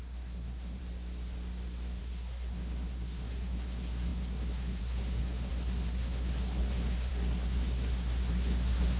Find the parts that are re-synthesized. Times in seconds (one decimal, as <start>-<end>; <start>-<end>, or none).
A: 0.0-0.8; 2.0-9.0